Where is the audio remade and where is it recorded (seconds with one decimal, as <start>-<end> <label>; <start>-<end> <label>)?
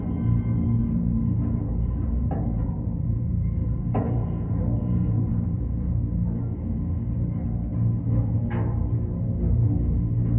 0.0-0.8 recorded; 0.8-5.9 remade; 5.9-10.4 recorded